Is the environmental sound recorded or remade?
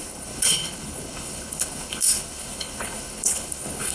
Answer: remade